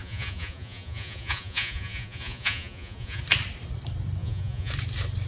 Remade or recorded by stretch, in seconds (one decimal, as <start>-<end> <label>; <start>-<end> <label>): 0.0-3.2 remade; 3.2-4.2 recorded; 4.2-4.7 remade; 4.7-5.3 recorded